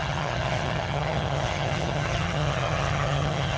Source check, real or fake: fake